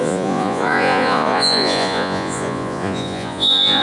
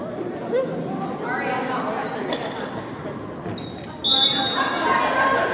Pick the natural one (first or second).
second